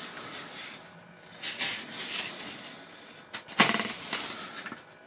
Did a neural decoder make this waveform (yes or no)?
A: no